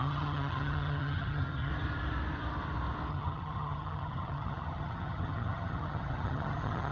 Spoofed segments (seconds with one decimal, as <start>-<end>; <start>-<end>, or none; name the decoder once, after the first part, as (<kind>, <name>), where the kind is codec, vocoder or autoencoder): 0.0-1.7 (vocoder, HiFi-GAN); 3.1-6.9